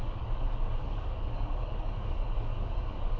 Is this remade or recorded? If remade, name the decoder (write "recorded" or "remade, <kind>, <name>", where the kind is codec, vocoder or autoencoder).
remade, codec, DAC